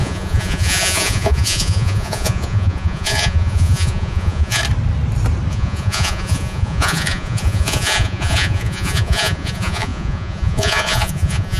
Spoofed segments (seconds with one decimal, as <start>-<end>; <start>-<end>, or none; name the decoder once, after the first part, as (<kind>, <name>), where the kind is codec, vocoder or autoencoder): 0.0-4.6 (vocoder, Vocos); 5.5-11.6